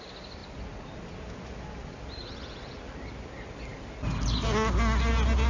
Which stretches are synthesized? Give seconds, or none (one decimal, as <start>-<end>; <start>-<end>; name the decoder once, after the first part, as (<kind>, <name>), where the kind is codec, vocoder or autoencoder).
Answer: none